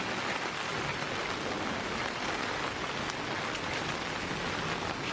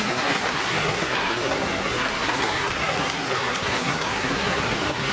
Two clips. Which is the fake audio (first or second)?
second